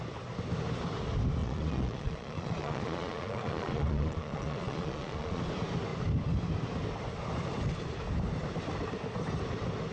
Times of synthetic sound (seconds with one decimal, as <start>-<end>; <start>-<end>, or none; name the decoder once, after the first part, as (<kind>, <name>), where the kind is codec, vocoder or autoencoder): 1.4-5.4 (vocoder, Vocos)